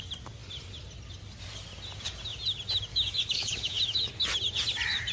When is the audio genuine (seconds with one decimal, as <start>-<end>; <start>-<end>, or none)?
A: 0.0-2.9; 4.1-5.1

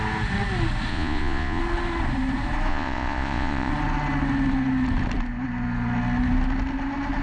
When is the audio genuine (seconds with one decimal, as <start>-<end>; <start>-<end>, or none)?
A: 0.0-0.9; 1.6-2.7; 3.7-7.2

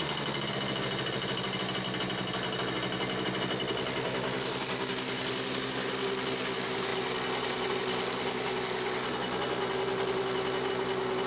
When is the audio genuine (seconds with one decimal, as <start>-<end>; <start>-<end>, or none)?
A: 0.0-11.3

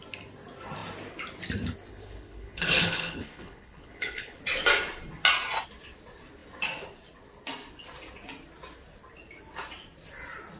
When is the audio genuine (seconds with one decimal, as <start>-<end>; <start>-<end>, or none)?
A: 0.0-1.9; 4.4-10.6

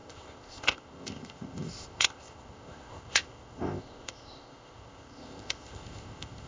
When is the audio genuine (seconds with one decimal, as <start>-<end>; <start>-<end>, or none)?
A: none

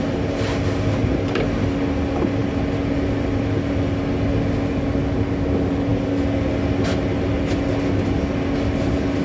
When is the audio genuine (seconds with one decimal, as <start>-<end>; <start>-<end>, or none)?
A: 0.0-1.0; 1.6-9.2

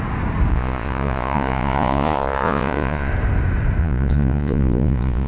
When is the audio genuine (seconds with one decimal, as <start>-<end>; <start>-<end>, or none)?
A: 0.0-0.5; 3.1-3.8